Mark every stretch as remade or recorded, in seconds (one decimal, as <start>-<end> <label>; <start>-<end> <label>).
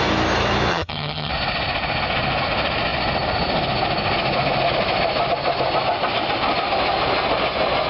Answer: 0.0-0.7 recorded; 0.7-1.3 remade; 1.3-7.9 recorded